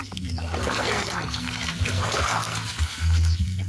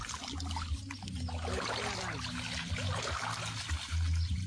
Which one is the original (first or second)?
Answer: second